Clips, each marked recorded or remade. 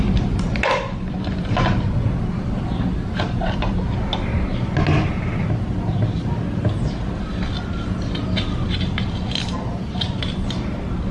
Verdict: recorded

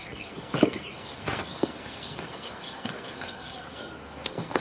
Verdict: remade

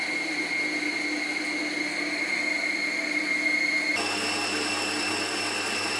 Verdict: recorded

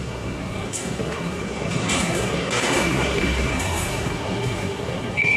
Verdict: remade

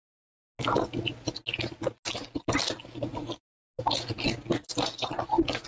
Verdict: recorded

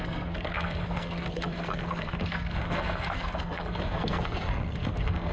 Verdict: remade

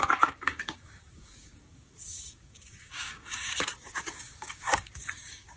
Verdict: remade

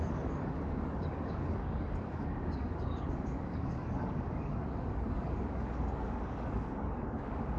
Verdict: remade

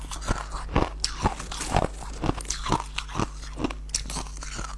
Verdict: recorded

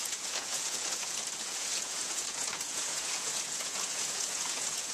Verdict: remade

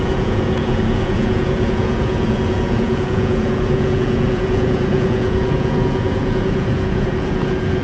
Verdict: remade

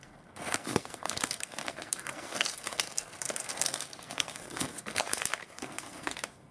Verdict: remade